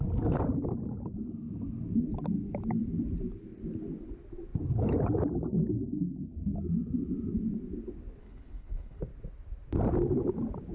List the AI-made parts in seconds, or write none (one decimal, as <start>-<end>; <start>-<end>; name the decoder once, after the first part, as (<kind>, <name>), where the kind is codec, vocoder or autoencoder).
8.2-9.0 (codec, HILCodec)